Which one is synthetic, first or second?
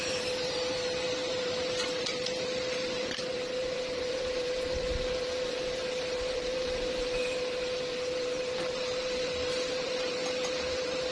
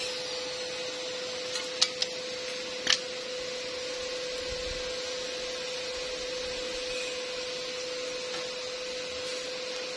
first